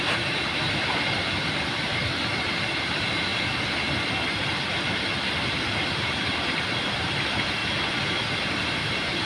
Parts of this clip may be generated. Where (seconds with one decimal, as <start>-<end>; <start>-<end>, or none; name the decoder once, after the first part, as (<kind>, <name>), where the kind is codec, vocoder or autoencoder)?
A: 0.0-2.0 (vocoder, BigVGAN v2); 2.9-3.3; 6.0-7.6; 8.4-9.3